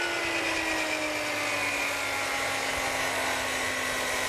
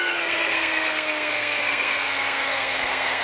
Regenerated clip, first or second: second